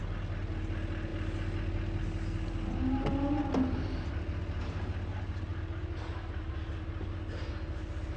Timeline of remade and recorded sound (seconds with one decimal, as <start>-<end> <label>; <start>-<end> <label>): 0.0-8.2 recorded